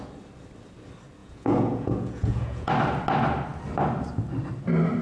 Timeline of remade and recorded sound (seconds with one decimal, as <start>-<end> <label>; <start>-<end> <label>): 0.0-1.2 recorded; 1.2-2.7 remade; 2.7-5.0 recorded